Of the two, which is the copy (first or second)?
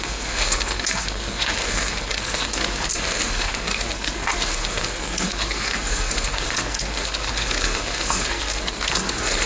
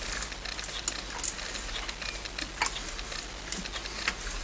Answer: first